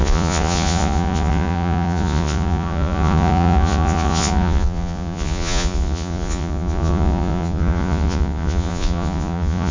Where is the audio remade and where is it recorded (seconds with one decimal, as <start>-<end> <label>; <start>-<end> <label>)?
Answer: 0.0-9.7 remade